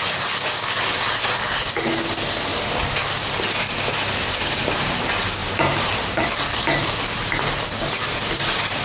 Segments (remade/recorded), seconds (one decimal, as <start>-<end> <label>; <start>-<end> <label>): 0.0-2.5 recorded; 2.5-3.3 remade; 3.3-5.4 recorded; 5.4-6.2 remade; 6.2-8.8 recorded